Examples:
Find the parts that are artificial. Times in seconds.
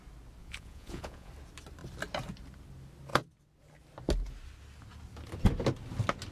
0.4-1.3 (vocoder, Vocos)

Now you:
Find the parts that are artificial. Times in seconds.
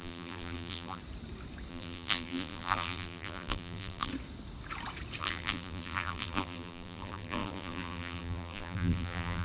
0.0-1.0 (vocoder, BigVGAN v2); 1.7-4.1; 5.2-9.4